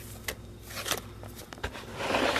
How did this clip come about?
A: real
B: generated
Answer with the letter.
A